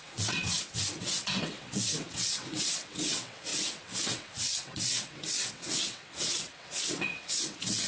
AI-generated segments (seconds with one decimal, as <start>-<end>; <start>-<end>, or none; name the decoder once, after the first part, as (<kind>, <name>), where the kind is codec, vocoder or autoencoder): 0.0-7.9 (vocoder, WaveNeXt)

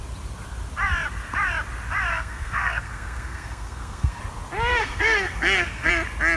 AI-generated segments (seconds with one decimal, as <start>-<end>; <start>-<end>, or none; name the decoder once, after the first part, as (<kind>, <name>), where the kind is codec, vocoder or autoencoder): 2.1-4.2 (codec, SNAC); 4.7-5.9

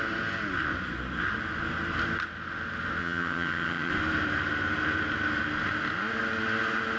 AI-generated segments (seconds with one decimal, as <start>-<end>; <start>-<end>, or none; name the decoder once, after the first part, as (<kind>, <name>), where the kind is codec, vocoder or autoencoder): 3.0-3.9 (vocoder, HiFi-GAN)

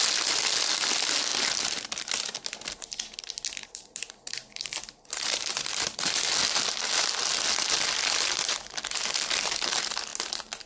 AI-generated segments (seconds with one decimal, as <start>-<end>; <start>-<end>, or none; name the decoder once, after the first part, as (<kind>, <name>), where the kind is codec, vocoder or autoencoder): 3.6-6.3 (vocoder, BigVGAN v2)

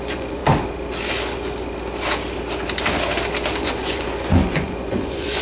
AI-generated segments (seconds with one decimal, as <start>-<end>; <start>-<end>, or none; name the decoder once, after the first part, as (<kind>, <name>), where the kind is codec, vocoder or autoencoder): 0.0-0.4 (vocoder, Vocos); 3.6-5.4